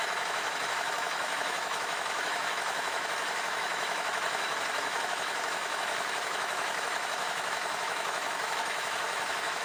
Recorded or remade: remade